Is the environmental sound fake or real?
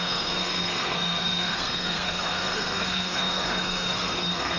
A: fake